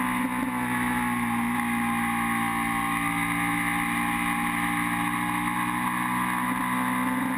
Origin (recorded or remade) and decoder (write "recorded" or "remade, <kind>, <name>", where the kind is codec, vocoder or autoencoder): recorded